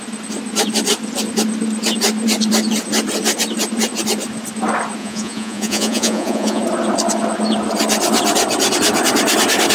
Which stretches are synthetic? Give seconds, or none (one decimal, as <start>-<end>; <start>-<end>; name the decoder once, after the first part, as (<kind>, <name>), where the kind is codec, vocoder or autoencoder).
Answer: 5.0-6.6 (vocoder, Vocos)